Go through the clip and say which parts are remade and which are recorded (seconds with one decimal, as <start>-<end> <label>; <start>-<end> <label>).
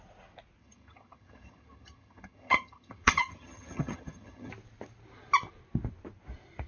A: 0.0-0.6 recorded; 0.6-4.5 remade; 4.5-6.7 recorded